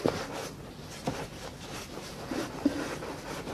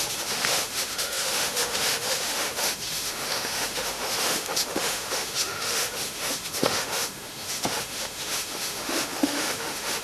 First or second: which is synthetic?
second